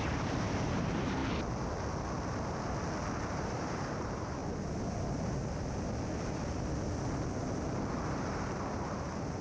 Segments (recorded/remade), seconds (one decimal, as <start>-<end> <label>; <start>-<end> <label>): 0.0-1.2 remade; 1.2-3.3 recorded; 3.3-4.4 remade; 4.4-8.1 recorded; 8.1-9.4 remade